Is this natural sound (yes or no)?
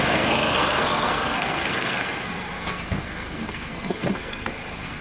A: no